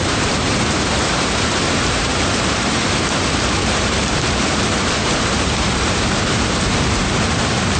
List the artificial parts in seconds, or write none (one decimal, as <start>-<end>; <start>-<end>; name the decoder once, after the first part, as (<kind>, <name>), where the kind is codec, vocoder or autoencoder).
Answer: 0.0-2.1 (vocoder, BigVGAN v2); 3.6-7.8